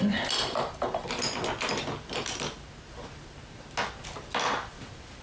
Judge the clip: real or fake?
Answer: real